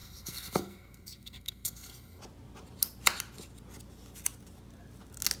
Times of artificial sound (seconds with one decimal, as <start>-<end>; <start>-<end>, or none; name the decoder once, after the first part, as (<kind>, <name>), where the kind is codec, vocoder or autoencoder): 0.0-2.2 (codec, SNAC)